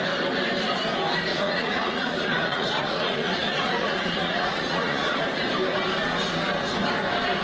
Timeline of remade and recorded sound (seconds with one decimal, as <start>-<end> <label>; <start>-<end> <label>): 0.0-1.3 recorded; 1.3-5.2 remade; 5.2-7.4 recorded